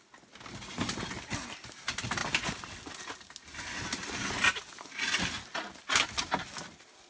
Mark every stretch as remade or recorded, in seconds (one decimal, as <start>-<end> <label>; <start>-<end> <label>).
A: 0.0-7.1 recorded